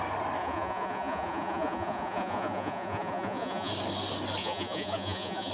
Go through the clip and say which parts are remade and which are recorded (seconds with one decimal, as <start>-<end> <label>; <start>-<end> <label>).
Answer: 0.0-0.4 recorded; 0.4-3.7 remade; 3.7-4.4 recorded; 4.4-5.5 remade